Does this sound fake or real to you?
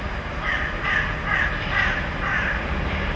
real